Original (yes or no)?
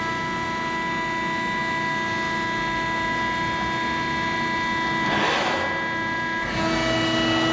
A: yes